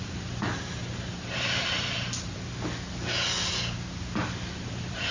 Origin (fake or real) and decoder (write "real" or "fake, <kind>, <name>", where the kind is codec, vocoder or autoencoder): real